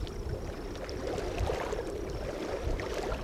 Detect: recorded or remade recorded